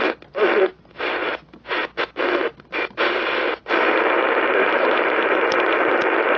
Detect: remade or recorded recorded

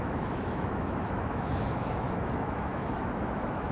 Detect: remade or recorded remade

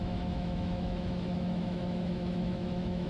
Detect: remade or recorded remade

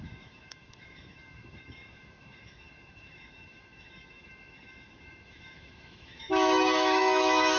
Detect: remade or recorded remade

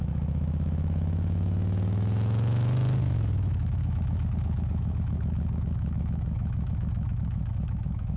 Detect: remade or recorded remade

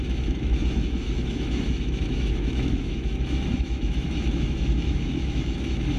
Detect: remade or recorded remade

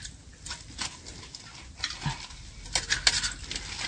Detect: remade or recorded recorded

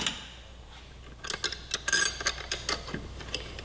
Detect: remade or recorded recorded